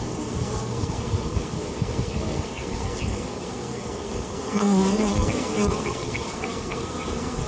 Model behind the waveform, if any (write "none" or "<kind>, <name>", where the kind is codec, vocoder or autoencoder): codec, SNAC